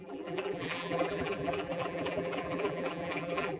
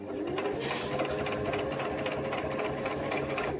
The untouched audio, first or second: second